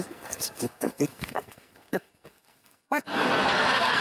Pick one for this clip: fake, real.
fake